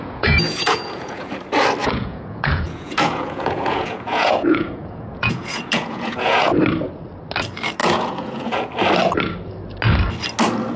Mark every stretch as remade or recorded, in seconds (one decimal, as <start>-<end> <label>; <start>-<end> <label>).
0.0-1.3 remade; 1.3-1.8 recorded; 1.8-6.5 remade; 6.5-7.8 recorded; 7.8-8.7 remade; 8.7-10.8 recorded